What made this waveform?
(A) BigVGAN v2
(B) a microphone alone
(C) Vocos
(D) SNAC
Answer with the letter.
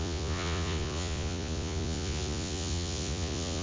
C